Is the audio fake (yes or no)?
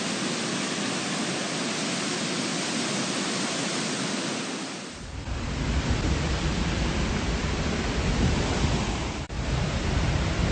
no